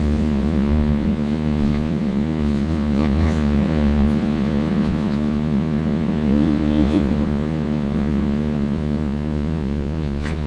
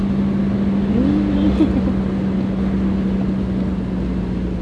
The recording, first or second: second